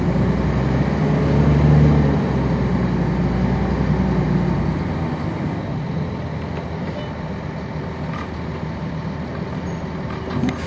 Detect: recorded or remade recorded